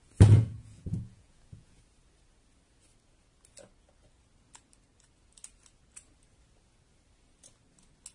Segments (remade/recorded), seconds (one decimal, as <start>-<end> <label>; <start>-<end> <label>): 0.0-1.8 remade; 1.8-8.1 recorded